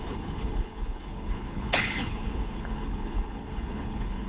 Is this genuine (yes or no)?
no